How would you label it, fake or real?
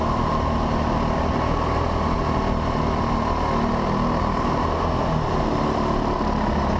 real